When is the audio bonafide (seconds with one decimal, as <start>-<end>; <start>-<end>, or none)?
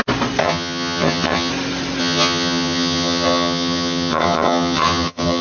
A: 0.0-0.4; 1.5-2.0